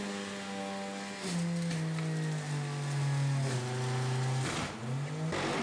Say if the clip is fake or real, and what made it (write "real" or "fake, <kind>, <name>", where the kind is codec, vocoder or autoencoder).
real